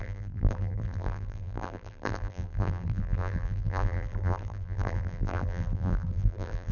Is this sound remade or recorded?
remade